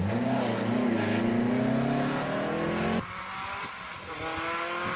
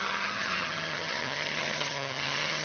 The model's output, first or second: second